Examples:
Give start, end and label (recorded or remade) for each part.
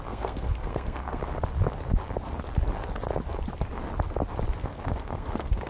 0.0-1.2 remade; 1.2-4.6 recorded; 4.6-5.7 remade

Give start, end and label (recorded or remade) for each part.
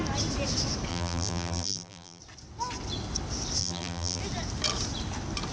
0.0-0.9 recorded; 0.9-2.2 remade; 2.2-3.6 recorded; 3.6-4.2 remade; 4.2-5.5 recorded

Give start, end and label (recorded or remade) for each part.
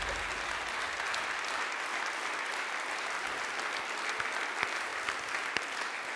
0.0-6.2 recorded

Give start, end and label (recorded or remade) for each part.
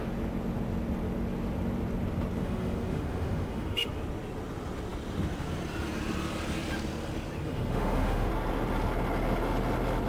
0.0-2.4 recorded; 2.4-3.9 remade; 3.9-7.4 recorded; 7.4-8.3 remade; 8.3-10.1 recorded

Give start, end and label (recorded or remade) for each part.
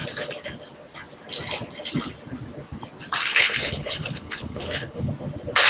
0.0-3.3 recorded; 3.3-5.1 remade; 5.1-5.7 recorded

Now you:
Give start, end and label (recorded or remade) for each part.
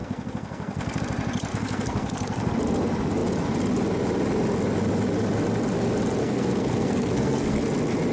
0.0-1.0 remade; 1.0-1.5 recorded; 1.5-2.5 remade; 2.5-6.2 recorded; 6.2-7.6 remade; 7.6-8.1 recorded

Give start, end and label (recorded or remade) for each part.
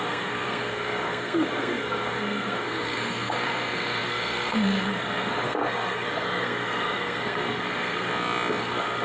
0.0-8.1 remade; 8.1-8.6 recorded; 8.6-9.0 remade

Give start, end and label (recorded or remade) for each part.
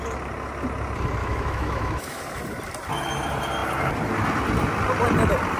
0.0-1.2 recorded; 1.2-2.2 remade; 2.2-5.6 recorded